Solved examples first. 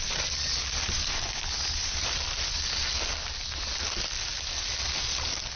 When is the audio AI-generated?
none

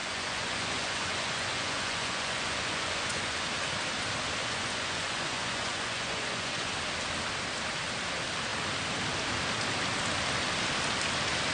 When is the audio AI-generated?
0.0-3.5 (vocoder, Vocos); 4.4-6.7